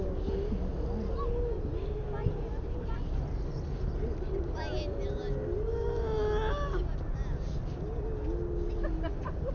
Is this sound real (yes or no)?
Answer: yes